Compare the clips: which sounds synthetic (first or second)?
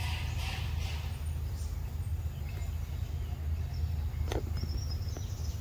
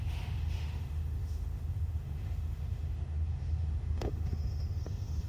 second